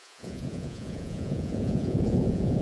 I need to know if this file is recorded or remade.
remade